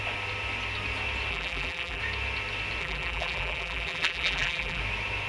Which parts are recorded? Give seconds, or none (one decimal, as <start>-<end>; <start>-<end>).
0.0-1.3; 2.0-2.8; 4.8-5.3